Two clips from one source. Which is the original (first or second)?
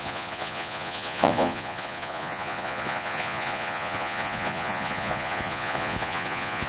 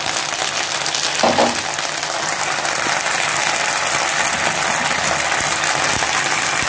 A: second